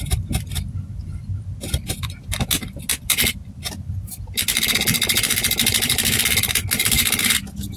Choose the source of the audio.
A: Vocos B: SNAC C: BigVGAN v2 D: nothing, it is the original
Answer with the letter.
D